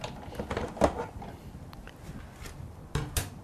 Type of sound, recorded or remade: recorded